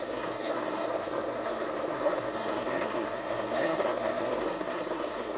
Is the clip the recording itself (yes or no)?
no